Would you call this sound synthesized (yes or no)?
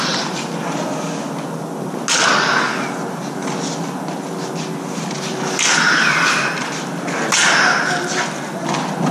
no